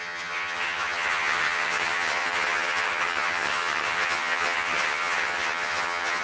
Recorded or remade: remade